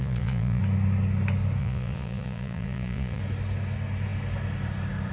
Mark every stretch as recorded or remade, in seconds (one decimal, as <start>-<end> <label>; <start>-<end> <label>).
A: 0.0-0.6 remade; 0.6-1.6 recorded; 1.6-3.2 remade; 3.2-5.1 recorded